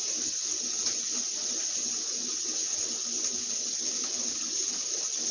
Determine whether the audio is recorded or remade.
recorded